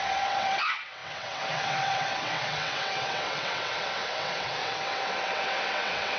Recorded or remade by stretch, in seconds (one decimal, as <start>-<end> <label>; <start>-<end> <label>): 0.0-6.2 remade